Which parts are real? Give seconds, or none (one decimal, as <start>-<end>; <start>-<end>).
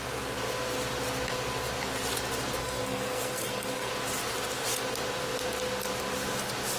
0.0-2.6; 3.9-6.8